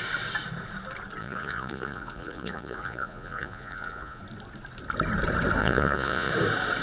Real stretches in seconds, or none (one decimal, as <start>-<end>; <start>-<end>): 0.0-1.2; 4.2-5.6; 6.3-6.8